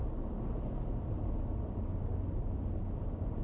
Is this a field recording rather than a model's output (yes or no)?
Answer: yes